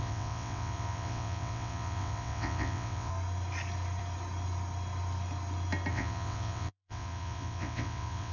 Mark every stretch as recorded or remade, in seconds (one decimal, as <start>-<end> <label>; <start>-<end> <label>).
0.0-3.1 remade; 3.1-5.9 recorded; 5.9-8.3 remade